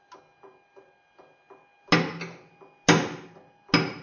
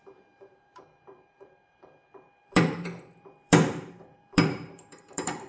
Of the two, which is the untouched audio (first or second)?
first